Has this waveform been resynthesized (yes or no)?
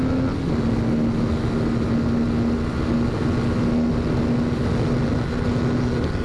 no